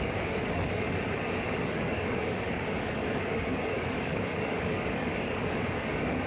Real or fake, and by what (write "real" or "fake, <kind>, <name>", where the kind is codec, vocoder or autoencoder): fake, codec, DAC